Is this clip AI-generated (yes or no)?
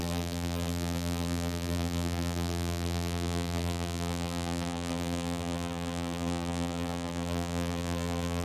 yes